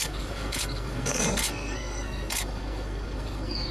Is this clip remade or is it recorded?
remade